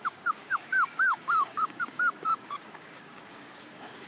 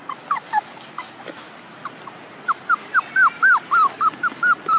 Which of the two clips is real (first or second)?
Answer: second